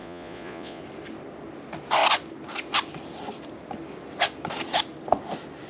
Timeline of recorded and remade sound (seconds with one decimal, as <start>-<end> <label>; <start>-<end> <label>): 0.0-0.8 remade; 0.8-5.7 recorded